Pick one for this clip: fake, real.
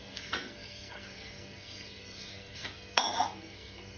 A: fake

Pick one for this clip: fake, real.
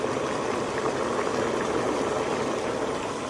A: real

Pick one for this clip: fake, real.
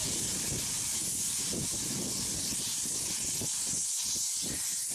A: real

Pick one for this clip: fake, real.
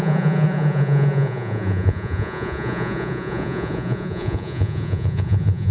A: fake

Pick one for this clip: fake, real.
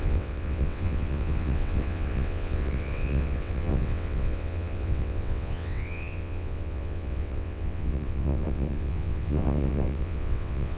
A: fake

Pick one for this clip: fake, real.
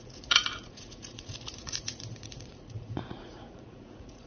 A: fake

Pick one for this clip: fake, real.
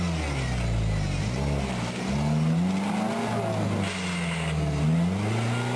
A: real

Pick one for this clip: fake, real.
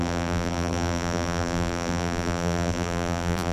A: fake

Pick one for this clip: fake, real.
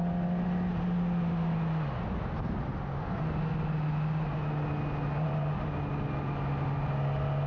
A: real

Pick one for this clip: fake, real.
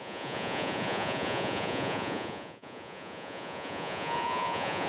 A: fake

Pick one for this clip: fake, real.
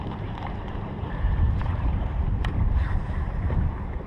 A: fake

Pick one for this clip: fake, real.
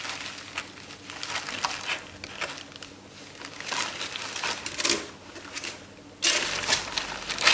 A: real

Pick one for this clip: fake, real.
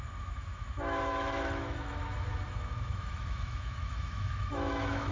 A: fake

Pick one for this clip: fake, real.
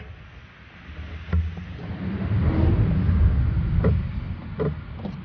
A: real